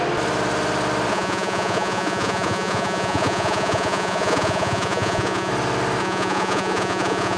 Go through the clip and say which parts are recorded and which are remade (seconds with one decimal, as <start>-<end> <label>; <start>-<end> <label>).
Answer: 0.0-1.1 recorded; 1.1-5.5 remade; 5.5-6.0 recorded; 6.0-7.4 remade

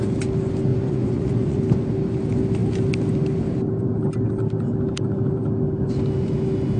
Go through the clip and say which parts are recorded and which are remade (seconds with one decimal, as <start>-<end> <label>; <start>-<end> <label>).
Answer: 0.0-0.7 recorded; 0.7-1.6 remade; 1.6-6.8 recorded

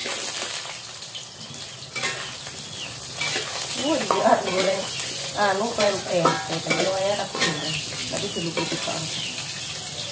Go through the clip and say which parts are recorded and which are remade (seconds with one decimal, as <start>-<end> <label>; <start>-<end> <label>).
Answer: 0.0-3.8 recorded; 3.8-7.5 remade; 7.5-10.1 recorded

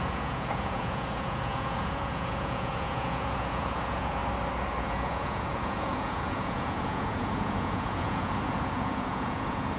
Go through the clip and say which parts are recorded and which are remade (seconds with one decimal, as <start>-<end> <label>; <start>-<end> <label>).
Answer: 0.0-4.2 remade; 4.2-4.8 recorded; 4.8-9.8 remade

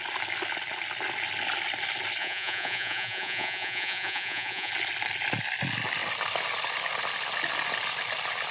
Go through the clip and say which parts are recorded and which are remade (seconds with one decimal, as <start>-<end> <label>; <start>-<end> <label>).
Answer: 0.0-2.2 recorded; 2.2-4.7 remade; 4.7-8.5 recorded

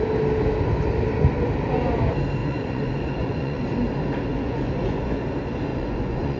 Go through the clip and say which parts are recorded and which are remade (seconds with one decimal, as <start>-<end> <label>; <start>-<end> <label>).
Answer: 0.0-2.4 recorded; 2.4-3.6 remade; 3.6-4.3 recorded; 4.3-5.2 remade; 5.2-5.7 recorded; 5.7-6.4 remade

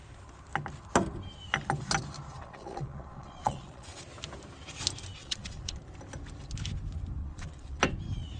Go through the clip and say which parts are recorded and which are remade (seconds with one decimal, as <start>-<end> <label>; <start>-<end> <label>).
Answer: 0.0-2.4 recorded; 2.4-4.0 remade; 4.0-5.2 recorded; 5.2-5.8 remade; 5.8-7.2 recorded; 7.2-7.8 remade; 7.8-8.4 recorded